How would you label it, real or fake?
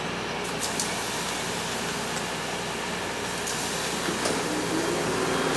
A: real